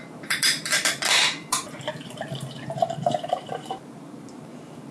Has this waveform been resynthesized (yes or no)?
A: yes